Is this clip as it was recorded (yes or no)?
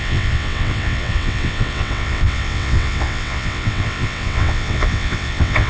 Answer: no